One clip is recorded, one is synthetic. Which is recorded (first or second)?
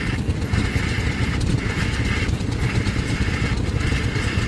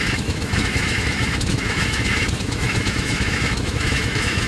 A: first